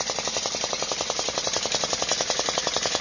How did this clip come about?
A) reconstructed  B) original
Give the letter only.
B